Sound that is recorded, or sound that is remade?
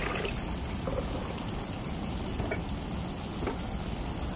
recorded